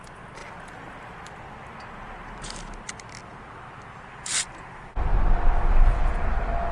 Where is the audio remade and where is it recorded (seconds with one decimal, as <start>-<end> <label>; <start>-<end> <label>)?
0.0-6.7 recorded